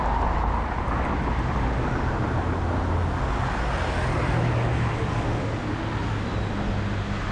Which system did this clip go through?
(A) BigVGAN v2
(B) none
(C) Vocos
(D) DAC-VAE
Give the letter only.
B